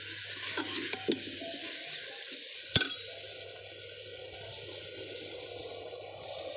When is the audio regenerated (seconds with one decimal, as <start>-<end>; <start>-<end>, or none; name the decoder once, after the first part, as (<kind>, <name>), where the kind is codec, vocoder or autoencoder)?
none